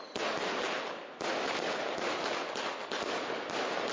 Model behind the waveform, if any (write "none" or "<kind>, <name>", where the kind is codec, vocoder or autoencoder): none